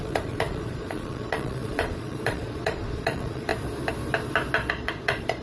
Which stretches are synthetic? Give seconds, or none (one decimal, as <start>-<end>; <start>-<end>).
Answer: 0.0-3.5; 4.7-5.4